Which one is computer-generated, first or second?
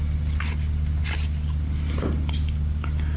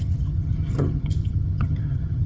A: second